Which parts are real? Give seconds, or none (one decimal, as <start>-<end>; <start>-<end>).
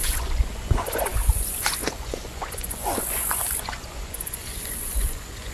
none